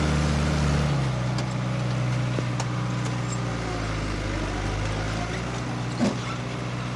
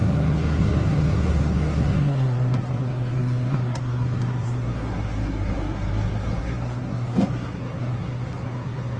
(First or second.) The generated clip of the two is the second